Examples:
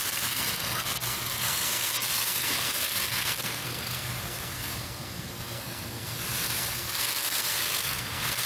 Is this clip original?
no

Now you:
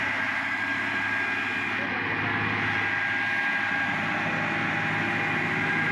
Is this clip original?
yes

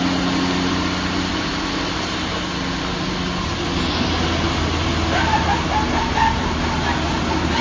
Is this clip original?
yes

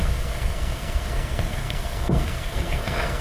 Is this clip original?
no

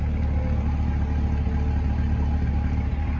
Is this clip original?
yes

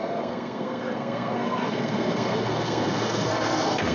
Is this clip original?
no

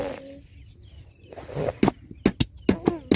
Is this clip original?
yes